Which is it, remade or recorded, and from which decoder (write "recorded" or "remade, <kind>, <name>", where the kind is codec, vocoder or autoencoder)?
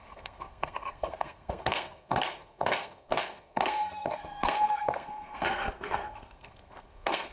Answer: remade, codec, SNAC